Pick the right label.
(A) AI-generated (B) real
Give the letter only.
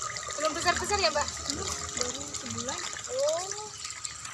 B